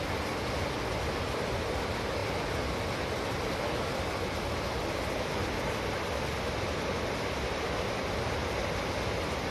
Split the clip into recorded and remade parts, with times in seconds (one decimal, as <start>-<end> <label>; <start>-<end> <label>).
0.0-9.5 recorded